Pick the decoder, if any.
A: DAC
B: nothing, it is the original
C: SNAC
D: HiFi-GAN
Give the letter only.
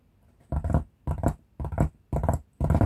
B